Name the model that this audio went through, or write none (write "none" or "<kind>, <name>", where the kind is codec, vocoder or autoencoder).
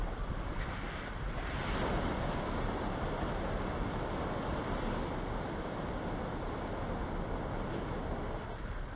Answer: none